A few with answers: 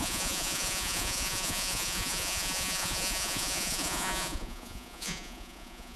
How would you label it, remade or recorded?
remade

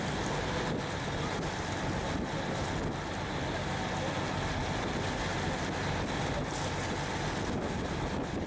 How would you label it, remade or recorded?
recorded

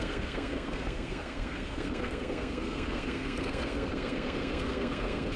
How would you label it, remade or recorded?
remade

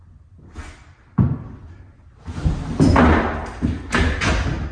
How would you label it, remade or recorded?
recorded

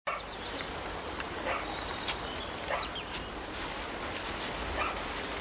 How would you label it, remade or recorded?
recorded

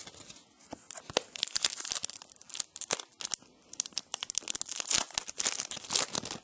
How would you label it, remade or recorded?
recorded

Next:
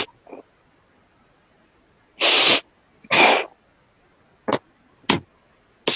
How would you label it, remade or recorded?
recorded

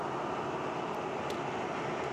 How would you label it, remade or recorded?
recorded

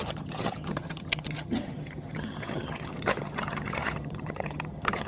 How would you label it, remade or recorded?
remade